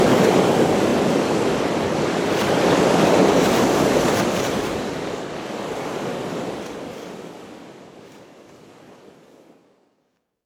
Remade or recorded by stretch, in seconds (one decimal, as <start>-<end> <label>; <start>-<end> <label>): 0.0-10.5 remade